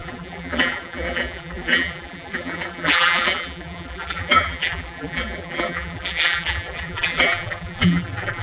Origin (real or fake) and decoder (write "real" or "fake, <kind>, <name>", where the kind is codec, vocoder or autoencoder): fake, vocoder, BigVGAN v2